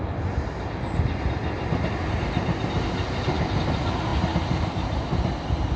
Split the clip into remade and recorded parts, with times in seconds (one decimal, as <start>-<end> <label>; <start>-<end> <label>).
0.0-5.8 recorded